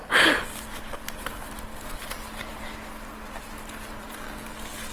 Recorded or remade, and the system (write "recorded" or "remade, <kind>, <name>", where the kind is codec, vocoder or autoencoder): recorded